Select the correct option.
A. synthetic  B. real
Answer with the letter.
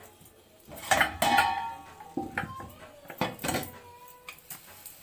B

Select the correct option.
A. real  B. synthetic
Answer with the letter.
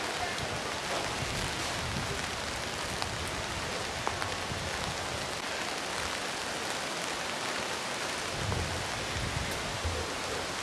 A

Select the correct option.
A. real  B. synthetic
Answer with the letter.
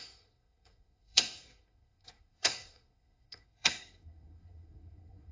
B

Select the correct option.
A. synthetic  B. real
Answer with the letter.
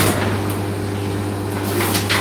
B